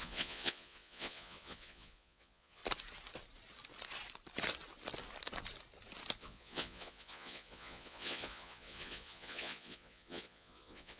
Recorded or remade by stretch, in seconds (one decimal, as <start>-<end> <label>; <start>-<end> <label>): 0.0-2.6 remade; 2.6-6.2 recorded; 6.2-11.0 remade